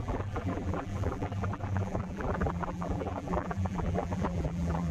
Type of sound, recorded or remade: remade